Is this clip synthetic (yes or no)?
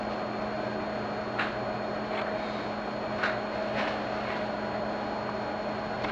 no